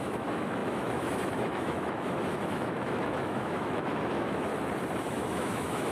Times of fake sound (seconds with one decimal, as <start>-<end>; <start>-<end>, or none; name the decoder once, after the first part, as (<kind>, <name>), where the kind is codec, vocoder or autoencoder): 0.0-4.5 (autoencoder, DAC-VAE); 5.1-5.9